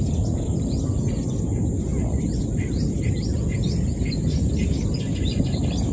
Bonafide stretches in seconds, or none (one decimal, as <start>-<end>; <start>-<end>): 0.0-5.9